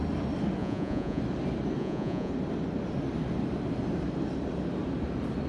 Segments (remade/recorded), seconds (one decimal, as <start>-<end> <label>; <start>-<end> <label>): 0.0-0.6 recorded; 0.6-1.2 remade; 1.2-1.8 recorded; 1.8-2.3 remade; 2.3-5.5 recorded